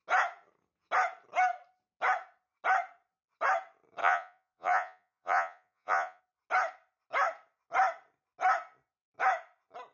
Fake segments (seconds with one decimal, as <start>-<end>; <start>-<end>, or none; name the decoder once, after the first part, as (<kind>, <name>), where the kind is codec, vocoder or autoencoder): 4.0-6.2 (vocoder, Vocos)